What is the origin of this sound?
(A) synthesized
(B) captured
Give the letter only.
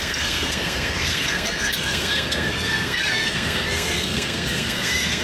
A